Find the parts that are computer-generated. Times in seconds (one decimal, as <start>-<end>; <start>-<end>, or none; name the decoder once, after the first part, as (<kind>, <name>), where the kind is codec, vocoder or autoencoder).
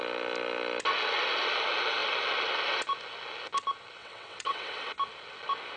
4.0-4.9 (vocoder, WaveNeXt)